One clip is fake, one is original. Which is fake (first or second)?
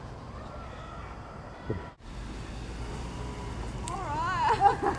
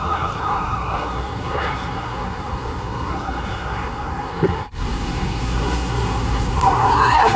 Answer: second